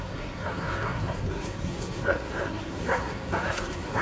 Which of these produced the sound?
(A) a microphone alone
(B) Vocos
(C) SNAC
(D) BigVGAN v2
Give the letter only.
C